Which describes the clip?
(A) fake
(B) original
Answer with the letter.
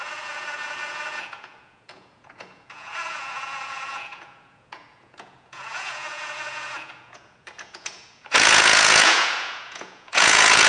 A